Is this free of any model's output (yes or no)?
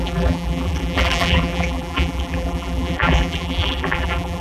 no